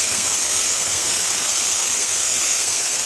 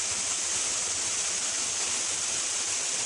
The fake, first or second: first